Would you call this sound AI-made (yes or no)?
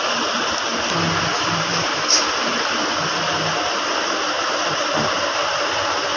no